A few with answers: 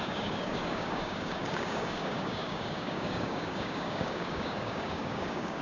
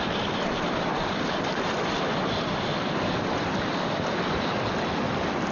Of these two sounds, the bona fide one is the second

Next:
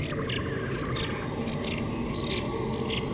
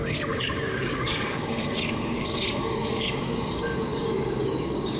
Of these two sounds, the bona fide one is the first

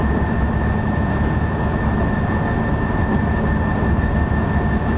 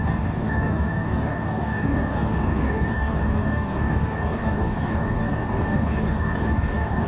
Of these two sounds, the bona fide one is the first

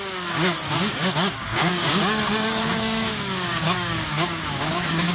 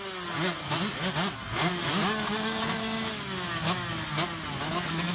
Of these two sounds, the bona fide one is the second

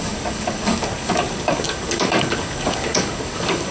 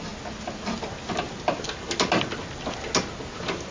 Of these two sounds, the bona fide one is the second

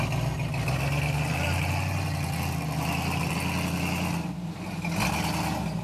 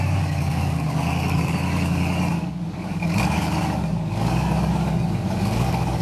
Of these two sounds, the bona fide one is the first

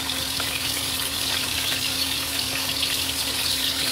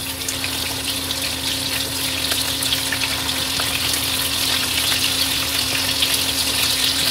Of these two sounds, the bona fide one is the second